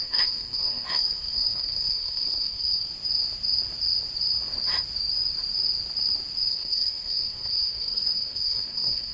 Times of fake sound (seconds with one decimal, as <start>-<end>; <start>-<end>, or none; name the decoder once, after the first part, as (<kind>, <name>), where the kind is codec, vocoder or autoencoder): 0.0-2.9 (codec, SNAC); 6.5-9.1